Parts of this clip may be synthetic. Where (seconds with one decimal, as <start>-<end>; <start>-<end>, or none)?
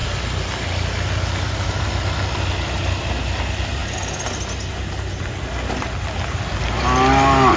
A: none